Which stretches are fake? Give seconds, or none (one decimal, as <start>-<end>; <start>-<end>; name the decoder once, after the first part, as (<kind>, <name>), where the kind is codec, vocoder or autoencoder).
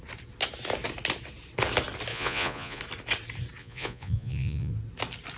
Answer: 2.1-2.8 (vocoder, Vocos); 3.6-4.7